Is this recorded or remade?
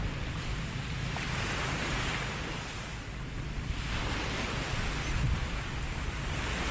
recorded